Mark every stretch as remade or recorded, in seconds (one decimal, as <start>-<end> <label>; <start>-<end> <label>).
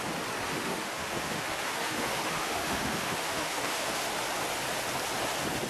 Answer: 0.0-0.5 recorded; 0.5-3.9 remade; 3.9-5.7 recorded